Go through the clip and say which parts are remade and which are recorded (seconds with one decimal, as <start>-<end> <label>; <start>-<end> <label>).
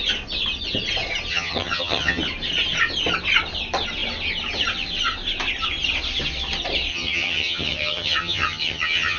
0.0-1.3 recorded; 1.3-2.2 remade; 2.2-6.9 recorded; 6.9-9.2 remade